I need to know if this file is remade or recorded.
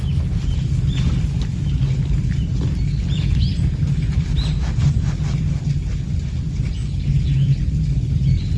recorded